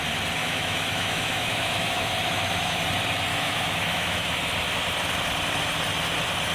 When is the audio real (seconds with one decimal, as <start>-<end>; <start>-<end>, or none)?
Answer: 0.0-0.4; 2.8-3.3; 4.4-6.5